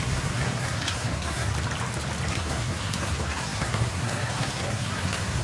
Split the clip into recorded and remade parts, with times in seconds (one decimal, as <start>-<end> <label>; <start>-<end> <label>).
0.0-1.5 remade; 1.5-2.3 recorded; 2.3-5.4 remade

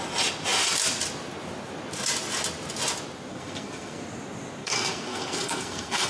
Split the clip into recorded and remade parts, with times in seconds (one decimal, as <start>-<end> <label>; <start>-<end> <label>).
0.0-3.3 recorded; 3.3-4.0 remade; 4.0-4.6 recorded; 4.6-6.1 remade

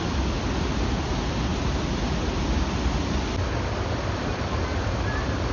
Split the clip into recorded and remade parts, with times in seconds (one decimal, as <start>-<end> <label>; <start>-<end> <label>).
0.0-5.5 recorded

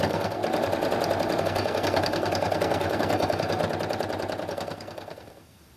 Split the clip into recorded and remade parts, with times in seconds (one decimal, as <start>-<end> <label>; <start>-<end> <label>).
0.0-0.4 remade; 0.4-1.4 recorded; 1.4-3.6 remade; 3.6-4.5 recorded; 4.5-5.8 remade